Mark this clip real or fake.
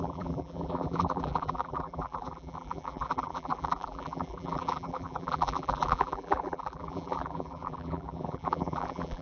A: fake